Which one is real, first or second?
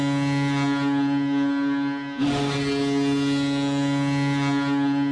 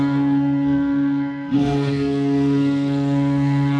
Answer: first